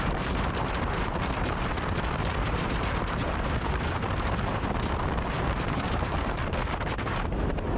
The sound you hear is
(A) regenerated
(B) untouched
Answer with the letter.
A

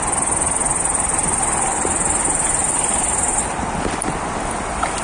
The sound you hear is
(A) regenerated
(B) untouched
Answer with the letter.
B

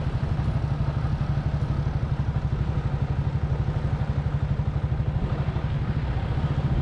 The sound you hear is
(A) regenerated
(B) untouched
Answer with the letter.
B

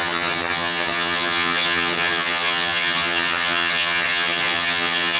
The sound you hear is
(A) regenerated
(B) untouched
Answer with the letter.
A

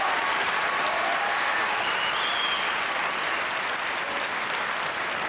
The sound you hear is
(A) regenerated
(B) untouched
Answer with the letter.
B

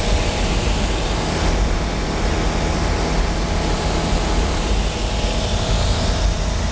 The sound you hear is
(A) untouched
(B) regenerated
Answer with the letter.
A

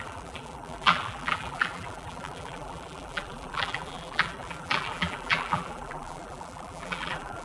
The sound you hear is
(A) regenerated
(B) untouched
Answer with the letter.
A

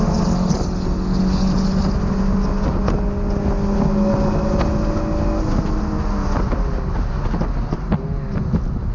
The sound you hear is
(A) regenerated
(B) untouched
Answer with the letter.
B